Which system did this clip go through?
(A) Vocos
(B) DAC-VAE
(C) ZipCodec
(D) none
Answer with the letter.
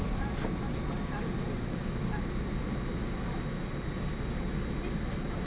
D